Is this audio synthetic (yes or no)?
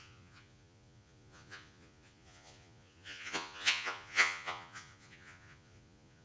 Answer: yes